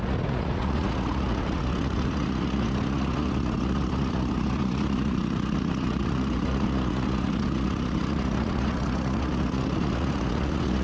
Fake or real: fake